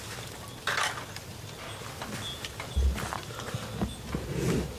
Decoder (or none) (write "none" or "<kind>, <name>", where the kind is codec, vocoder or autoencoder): none